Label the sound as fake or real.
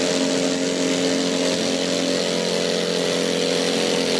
real